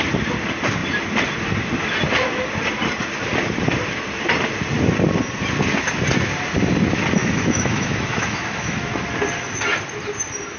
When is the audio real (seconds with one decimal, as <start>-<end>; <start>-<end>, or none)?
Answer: 0.0-7.2; 9.0-10.6